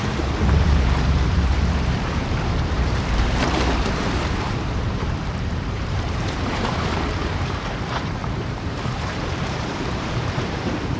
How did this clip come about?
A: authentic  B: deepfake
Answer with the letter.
B